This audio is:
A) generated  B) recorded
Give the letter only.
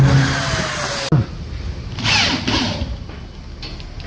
B